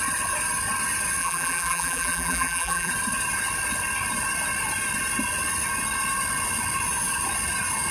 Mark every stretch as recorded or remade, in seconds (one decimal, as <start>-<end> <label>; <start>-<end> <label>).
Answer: 0.0-1.2 recorded; 1.2-2.9 remade; 2.9-7.9 recorded